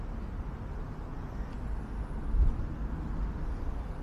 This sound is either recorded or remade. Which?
recorded